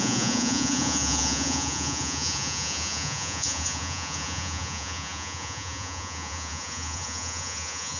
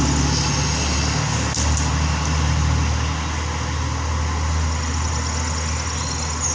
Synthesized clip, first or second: first